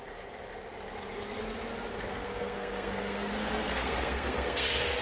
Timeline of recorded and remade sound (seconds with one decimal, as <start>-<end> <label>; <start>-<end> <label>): 0.0-1.9 recorded; 1.9-5.0 remade